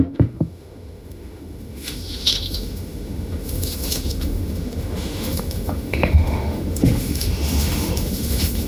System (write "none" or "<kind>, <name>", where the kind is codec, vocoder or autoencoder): autoencoder, DAC-VAE